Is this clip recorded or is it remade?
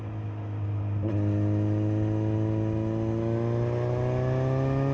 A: recorded